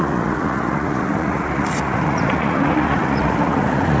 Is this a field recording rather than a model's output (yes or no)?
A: no